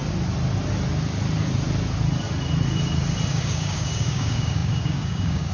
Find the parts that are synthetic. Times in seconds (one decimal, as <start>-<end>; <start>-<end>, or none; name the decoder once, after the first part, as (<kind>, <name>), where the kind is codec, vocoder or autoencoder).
3.3-5.5 (codec, DAC)